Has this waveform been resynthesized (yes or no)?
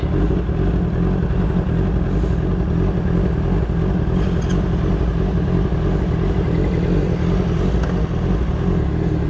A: no